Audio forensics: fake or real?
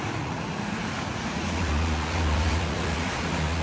fake